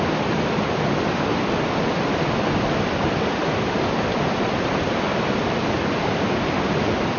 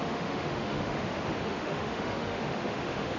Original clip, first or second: first